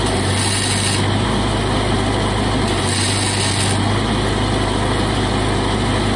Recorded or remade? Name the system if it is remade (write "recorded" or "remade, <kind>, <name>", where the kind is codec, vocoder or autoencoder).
recorded